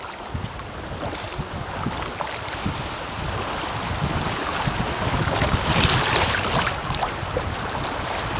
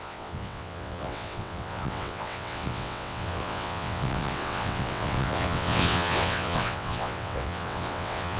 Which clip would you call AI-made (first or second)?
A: second